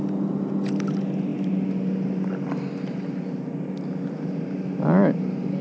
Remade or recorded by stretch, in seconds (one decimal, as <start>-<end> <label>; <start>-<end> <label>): 0.0-5.6 recorded